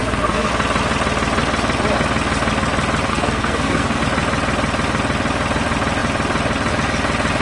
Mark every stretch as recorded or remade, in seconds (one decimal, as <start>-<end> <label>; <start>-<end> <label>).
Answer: 0.0-0.5 remade; 0.5-3.1 recorded; 3.1-4.0 remade; 4.0-7.4 recorded